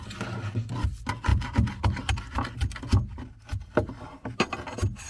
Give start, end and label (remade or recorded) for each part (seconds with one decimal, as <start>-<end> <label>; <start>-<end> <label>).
0.0-5.1 recorded